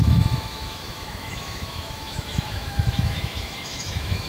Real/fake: fake